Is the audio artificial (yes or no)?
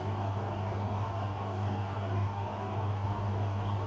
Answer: yes